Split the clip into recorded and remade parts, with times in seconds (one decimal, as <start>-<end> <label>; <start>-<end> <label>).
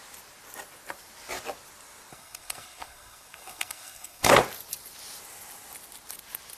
0.0-2.1 recorded; 2.1-4.3 remade; 4.3-6.6 recorded